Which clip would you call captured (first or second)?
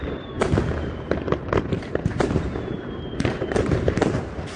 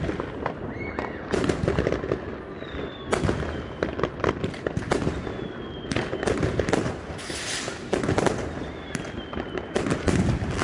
second